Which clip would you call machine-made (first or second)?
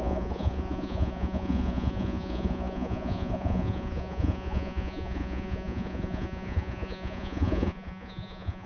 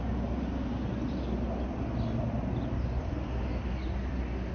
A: first